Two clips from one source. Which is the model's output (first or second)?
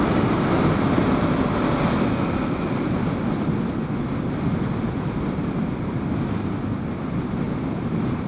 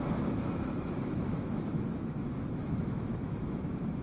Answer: second